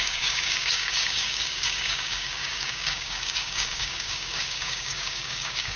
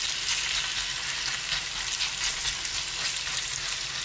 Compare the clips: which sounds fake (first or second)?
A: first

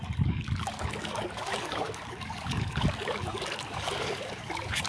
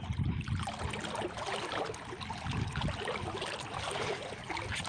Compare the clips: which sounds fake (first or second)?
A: first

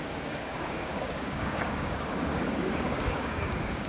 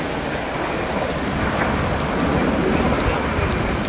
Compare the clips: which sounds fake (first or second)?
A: first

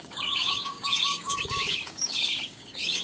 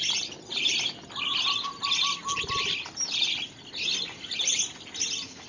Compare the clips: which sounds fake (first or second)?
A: first